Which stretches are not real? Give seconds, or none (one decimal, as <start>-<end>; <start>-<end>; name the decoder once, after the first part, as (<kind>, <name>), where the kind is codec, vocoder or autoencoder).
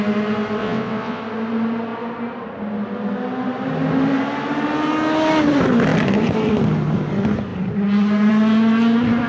0.6-1.2 (vocoder, WaveNeXt)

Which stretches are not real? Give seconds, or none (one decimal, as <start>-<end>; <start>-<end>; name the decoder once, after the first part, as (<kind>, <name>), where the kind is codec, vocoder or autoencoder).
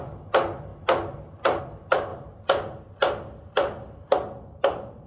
none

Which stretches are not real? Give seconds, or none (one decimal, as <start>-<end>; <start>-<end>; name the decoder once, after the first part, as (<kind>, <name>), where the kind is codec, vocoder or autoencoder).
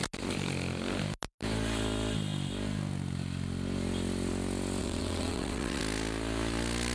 4.8-5.8 (vocoder, WaveNeXt)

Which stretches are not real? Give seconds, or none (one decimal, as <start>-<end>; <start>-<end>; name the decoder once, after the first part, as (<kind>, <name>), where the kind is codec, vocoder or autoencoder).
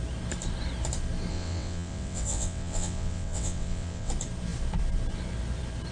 1.3-4.1 (vocoder, WaveNeXt)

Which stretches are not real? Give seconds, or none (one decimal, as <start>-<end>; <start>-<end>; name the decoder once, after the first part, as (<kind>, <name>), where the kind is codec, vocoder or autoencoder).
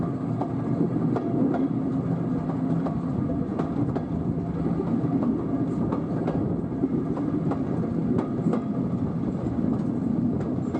none